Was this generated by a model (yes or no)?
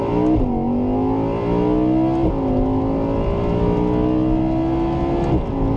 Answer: no